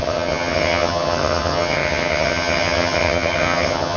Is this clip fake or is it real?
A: fake